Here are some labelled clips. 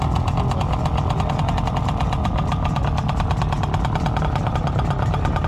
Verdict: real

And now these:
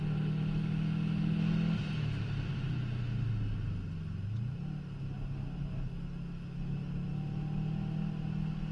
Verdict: real